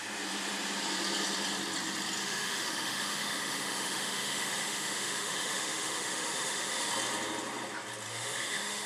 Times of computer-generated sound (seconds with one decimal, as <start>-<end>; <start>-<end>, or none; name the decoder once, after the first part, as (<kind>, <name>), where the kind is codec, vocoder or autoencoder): 2.2-6.9 (autoencoder, DAC-VAE); 8.1-8.9